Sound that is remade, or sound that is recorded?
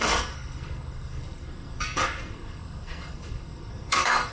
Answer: remade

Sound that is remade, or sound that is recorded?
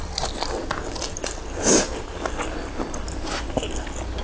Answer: recorded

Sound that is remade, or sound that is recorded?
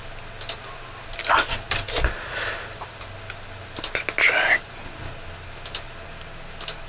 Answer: recorded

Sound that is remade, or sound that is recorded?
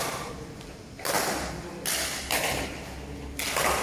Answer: recorded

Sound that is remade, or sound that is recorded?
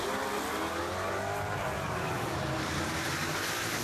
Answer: recorded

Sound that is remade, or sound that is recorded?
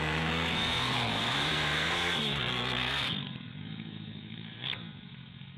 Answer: remade